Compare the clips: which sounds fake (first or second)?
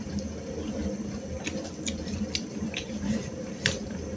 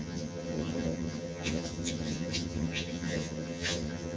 second